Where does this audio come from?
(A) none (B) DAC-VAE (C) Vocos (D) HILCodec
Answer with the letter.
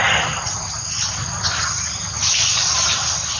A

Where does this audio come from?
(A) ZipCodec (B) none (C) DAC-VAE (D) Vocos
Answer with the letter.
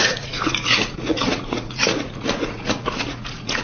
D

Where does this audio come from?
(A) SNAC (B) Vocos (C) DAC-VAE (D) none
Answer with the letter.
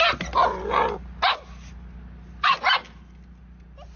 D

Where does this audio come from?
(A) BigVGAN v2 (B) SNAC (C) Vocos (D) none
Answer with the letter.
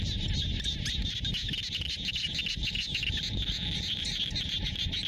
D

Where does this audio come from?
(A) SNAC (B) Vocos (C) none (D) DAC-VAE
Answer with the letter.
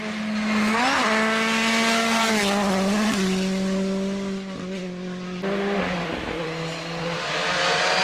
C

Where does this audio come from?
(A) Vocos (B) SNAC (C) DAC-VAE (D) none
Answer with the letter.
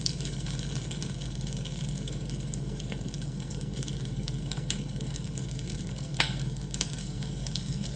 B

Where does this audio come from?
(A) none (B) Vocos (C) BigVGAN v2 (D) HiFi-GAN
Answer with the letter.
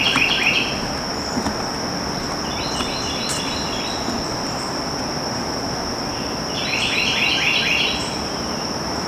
A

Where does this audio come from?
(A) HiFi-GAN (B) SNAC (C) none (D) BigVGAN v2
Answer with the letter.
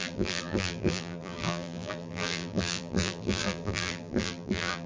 D